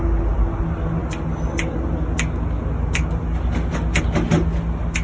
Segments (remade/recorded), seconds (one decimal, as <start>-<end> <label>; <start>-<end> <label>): 0.0-5.0 recorded